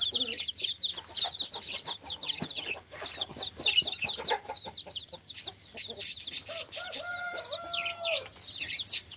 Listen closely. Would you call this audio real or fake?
real